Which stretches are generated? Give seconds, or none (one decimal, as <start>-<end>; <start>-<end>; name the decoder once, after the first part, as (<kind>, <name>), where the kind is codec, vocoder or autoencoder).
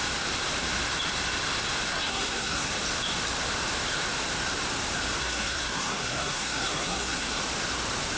1.9-2.7 (codec, SNAC); 5.2-7.4